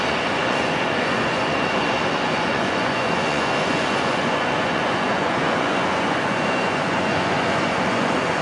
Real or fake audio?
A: fake